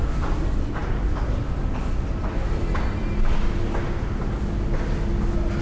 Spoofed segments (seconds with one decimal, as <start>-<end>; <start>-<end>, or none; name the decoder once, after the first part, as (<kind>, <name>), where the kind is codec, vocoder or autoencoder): none